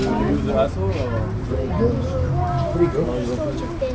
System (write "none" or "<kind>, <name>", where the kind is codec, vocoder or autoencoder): none